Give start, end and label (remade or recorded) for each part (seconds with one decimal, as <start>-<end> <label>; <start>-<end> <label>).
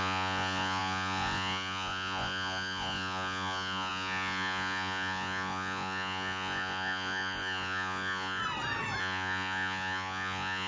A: 0.0-8.4 remade; 8.4-9.0 recorded; 9.0-10.7 remade